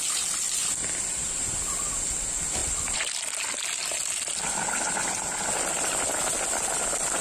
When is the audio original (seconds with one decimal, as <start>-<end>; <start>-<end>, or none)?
0.0-7.2

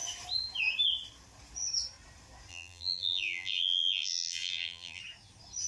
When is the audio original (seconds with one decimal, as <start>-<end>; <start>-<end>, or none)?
0.0-2.5; 5.0-5.7

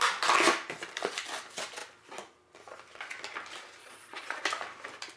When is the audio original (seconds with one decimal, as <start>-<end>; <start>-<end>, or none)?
0.0-3.8; 4.4-5.2

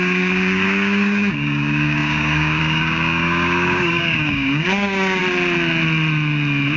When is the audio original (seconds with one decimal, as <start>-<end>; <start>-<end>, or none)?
5.2-6.8

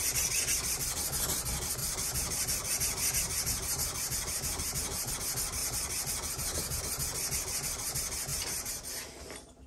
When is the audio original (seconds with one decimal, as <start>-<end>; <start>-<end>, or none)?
0.0-1.8; 5.1-5.6; 6.8-8.3

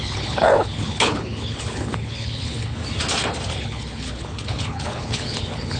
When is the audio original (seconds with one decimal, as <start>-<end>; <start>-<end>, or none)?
2.8-3.5

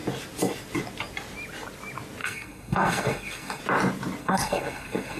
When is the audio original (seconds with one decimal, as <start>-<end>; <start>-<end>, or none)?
0.0-2.2; 3.6-4.2

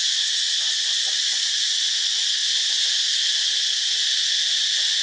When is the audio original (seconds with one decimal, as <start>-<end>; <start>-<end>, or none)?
0.0-1.2; 1.8-5.0